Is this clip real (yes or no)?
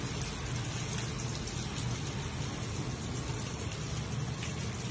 yes